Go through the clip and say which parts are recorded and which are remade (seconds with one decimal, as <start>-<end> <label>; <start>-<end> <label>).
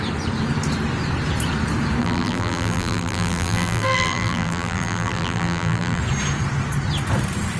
0.0-2.0 recorded; 2.0-6.0 remade; 6.0-7.6 recorded